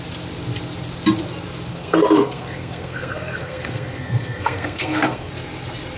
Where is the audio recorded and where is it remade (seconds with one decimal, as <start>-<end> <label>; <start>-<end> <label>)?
0.0-1.7 recorded; 1.7-5.3 remade; 5.3-6.0 recorded